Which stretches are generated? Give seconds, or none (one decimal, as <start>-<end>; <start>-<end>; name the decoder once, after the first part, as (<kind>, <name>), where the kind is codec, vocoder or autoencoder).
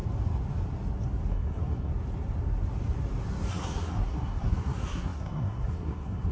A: 1.3-1.9 (codec, SNAC); 3.5-6.3